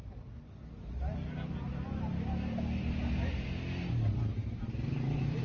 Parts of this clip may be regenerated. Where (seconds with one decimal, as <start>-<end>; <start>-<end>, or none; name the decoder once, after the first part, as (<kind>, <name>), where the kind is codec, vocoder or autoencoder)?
4.4-5.4 (vocoder, BigVGAN v2)